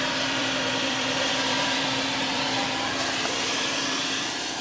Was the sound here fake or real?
fake